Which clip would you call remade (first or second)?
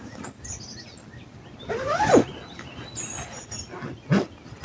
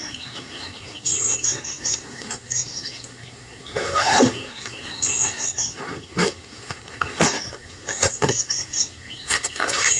second